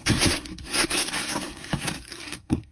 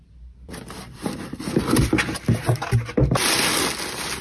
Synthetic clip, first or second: first